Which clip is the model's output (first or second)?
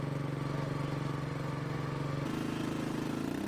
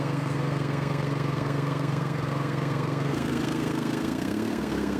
second